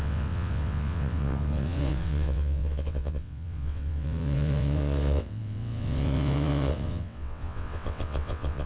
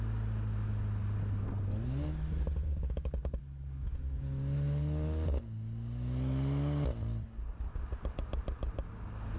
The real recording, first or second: second